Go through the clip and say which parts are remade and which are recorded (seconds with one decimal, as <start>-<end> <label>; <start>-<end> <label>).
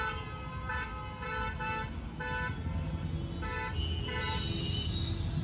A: 0.0-5.4 recorded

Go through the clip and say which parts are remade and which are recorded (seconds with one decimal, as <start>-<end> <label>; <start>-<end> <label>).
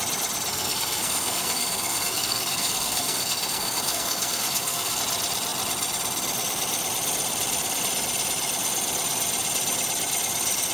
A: 0.0-0.5 recorded; 0.5-5.0 remade; 5.0-10.7 recorded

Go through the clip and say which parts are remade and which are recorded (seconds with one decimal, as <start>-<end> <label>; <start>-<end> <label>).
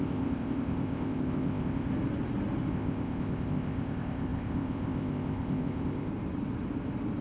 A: 0.0-1.9 remade; 1.9-2.7 recorded; 2.7-6.1 remade; 6.1-7.2 recorded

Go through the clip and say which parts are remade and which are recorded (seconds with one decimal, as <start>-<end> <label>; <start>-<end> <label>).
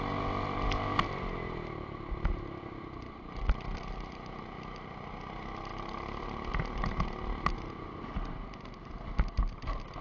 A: 0.0-10.0 recorded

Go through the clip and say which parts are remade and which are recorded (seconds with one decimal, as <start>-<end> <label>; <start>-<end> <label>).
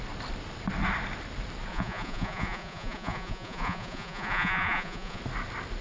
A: 0.0-1.7 recorded; 1.7-5.2 remade; 5.2-5.8 recorded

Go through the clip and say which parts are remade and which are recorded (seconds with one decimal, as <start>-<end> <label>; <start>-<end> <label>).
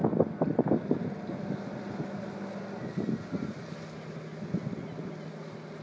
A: 0.0-5.8 recorded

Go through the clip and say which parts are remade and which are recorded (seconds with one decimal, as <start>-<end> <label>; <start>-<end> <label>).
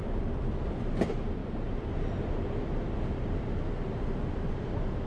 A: 0.0-5.1 recorded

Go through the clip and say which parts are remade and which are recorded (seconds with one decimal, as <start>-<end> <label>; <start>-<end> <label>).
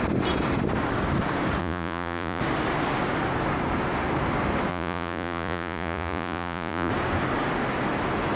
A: 0.0-1.6 recorded; 1.6-2.4 remade; 2.4-4.7 recorded; 4.7-6.9 remade; 6.9-8.4 recorded